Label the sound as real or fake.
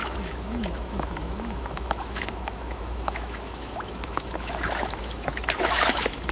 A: fake